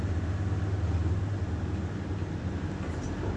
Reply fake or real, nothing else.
real